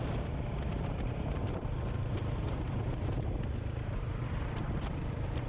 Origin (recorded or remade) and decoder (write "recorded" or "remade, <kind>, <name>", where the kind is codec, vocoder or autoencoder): remade, vocoder, BigVGAN v2